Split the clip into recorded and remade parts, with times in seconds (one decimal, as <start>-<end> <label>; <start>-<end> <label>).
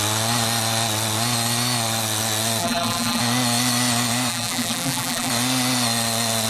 0.0-2.6 recorded; 2.6-3.2 remade; 3.2-4.3 recorded; 4.3-5.3 remade; 5.3-6.5 recorded